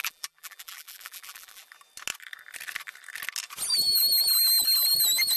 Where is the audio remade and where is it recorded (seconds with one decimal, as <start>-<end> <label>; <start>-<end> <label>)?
0.0-1.7 remade; 1.7-5.4 recorded